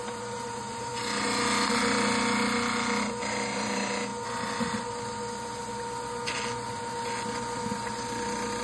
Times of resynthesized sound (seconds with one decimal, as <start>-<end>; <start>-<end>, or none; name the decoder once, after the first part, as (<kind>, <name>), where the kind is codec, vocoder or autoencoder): 0.0-0.9 (vocoder, BigVGAN v2); 3.0-4.1